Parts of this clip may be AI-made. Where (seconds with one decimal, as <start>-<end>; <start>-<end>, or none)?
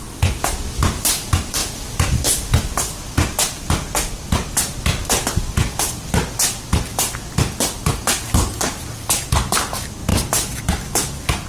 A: 10.1-10.6